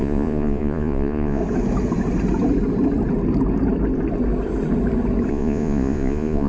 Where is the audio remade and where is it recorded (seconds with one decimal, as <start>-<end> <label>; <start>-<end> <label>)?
0.0-1.4 remade; 1.4-5.3 recorded; 5.3-6.5 remade